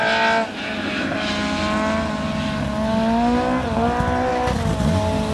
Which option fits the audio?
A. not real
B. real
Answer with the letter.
B